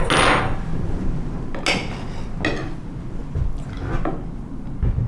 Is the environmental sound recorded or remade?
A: recorded